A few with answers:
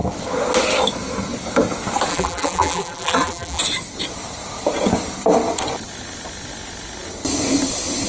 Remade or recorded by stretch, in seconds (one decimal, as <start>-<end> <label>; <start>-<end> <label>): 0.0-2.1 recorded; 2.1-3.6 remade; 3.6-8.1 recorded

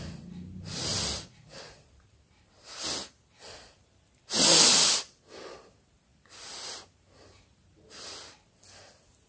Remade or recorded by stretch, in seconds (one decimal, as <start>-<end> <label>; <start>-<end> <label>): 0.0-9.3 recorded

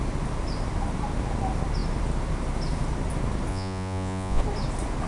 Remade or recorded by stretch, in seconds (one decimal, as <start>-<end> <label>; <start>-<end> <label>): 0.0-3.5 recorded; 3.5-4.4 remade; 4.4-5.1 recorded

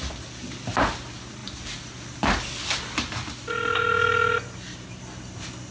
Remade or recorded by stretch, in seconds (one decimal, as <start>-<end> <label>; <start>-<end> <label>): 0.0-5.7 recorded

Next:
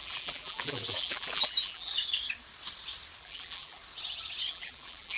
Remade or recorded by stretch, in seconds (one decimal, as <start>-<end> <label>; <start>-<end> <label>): 0.0-1.9 remade; 1.9-3.2 recorded; 3.2-3.8 remade; 3.8-4.5 recorded; 4.5-5.2 remade

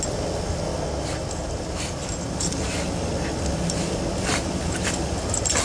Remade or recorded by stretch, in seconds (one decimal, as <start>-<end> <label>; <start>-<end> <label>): 0.0-5.6 recorded